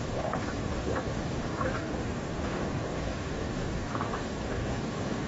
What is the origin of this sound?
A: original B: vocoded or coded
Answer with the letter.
B